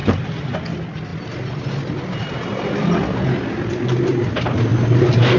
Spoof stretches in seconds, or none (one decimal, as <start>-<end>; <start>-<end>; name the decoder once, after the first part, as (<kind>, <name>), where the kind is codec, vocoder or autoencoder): 0.0-0.6 (vocoder, BigVGAN v2); 4.7-5.4